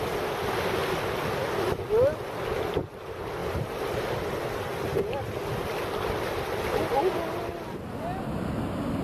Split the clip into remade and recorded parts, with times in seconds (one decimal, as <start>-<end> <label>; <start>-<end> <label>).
0.0-9.0 recorded